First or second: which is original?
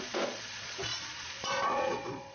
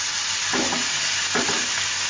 second